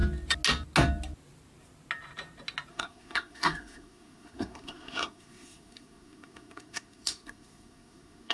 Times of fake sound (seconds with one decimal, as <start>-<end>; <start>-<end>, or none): 2.7-8.3